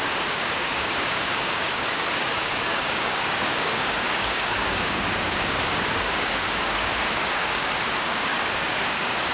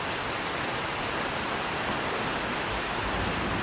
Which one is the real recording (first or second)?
second